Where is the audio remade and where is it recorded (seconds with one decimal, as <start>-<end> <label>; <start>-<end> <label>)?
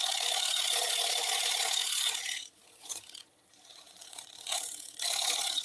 0.0-5.6 remade